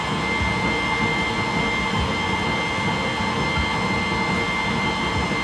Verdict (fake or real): real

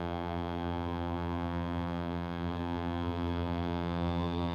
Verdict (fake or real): fake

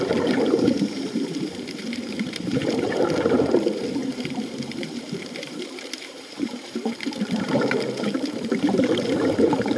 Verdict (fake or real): fake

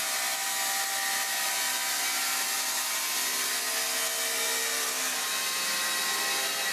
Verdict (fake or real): real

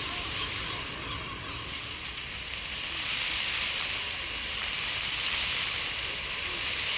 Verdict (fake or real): fake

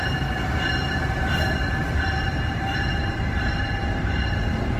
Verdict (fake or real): fake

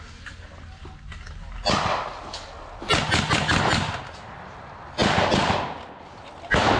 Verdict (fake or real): real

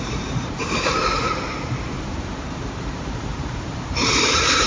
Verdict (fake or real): fake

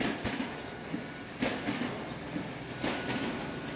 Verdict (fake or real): real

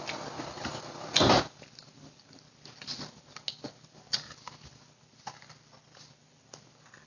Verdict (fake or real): real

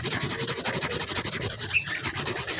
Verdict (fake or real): fake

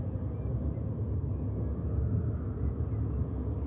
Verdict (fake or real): real